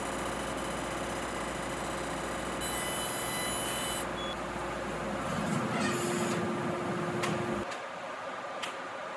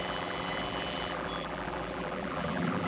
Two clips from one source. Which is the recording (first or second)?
first